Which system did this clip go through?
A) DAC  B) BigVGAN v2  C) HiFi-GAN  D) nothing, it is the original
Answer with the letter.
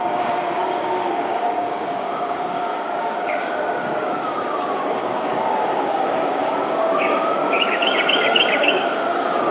A